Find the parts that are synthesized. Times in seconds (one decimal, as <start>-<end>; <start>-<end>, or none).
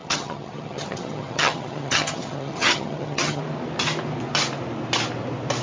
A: 0.0-3.4